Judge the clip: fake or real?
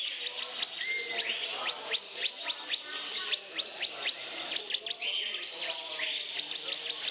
real